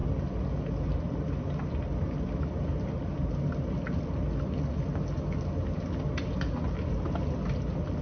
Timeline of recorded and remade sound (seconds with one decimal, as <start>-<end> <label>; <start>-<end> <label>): 0.0-8.0 recorded